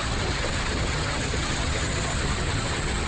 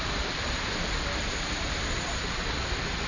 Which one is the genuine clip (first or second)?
second